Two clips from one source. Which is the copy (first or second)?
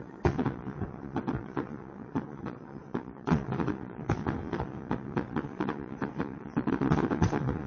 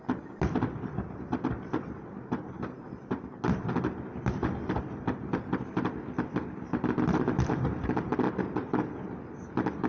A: first